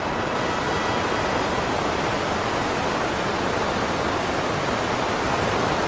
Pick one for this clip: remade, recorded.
recorded